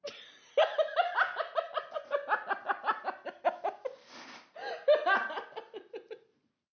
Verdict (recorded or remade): recorded